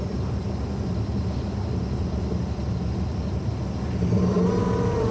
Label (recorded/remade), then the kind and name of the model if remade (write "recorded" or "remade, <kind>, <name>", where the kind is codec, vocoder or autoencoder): recorded